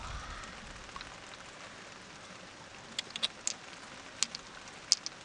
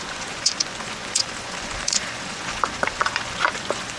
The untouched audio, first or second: first